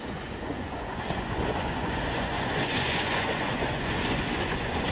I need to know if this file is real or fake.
fake